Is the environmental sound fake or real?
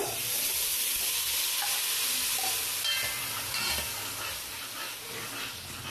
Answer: real